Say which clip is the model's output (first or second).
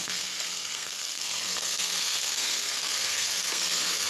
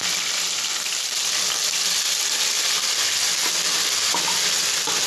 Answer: first